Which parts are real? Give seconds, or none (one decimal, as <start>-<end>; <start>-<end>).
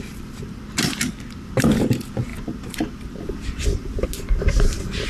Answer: 0.0-5.1